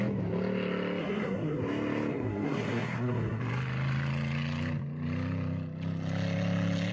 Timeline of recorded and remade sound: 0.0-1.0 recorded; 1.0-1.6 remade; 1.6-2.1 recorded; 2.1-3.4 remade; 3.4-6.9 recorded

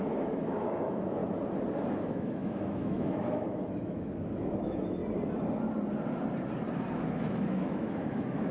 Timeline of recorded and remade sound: 0.0-1.2 remade; 1.2-2.0 recorded; 2.0-5.0 remade; 5.0-6.9 recorded; 6.9-8.5 remade

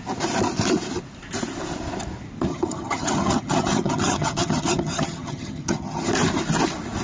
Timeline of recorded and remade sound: 0.0-2.5 recorded; 2.5-6.1 remade; 6.1-7.0 recorded